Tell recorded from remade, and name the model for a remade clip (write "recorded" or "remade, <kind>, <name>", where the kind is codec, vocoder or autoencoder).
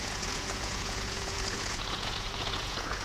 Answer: remade, vocoder, Vocos